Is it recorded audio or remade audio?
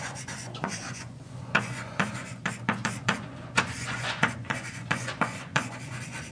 remade